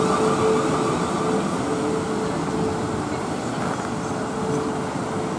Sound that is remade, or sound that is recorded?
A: recorded